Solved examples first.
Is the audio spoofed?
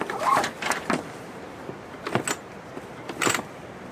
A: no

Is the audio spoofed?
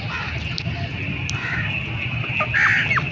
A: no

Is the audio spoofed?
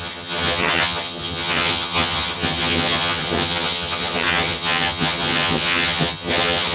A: yes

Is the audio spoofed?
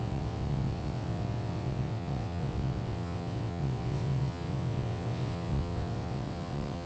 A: yes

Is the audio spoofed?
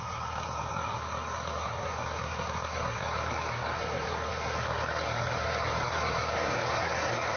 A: yes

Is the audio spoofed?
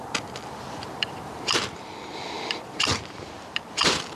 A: yes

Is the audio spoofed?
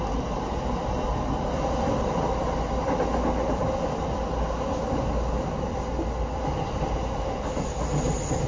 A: no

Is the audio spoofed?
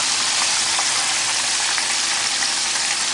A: yes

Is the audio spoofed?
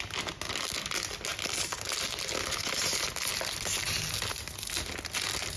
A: no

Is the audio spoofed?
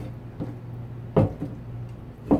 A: no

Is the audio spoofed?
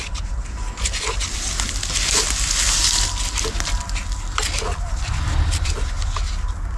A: no